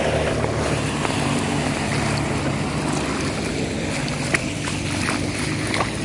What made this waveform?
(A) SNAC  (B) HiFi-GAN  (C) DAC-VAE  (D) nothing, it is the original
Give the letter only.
D